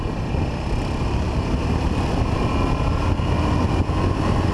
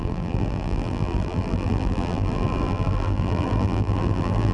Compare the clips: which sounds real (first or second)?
first